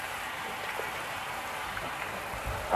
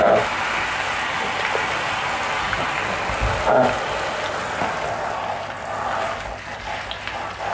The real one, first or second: second